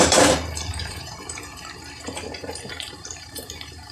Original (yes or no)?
no